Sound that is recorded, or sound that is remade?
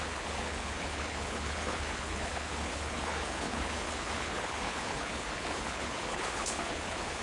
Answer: remade